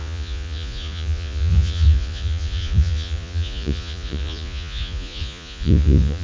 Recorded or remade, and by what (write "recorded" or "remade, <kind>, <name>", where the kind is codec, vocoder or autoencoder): remade, vocoder, Vocos